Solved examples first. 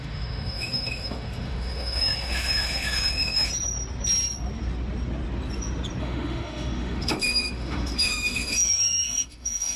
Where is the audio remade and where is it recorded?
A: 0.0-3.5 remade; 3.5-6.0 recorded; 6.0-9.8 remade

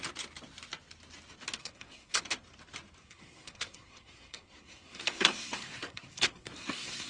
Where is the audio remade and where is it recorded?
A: 0.0-1.6 recorded; 1.6-2.2 remade; 2.2-3.0 recorded; 3.0-7.1 remade

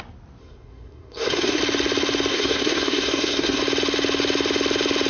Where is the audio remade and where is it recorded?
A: 0.0-0.4 recorded; 0.4-1.6 remade; 1.6-2.3 recorded; 2.3-3.6 remade; 3.6-5.1 recorded

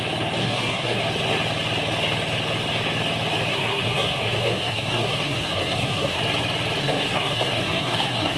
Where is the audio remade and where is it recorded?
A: 0.0-0.4 recorded; 0.4-1.0 remade; 1.0-3.5 recorded; 3.5-6.2 remade; 6.2-6.8 recorded; 6.8-8.4 remade

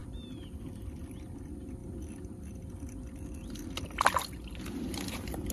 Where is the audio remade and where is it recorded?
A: 0.0-5.5 recorded

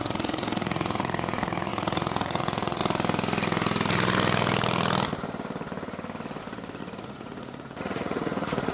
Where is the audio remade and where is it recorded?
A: 0.0-2.8 remade; 2.8-6.8 recorded; 6.8-8.7 remade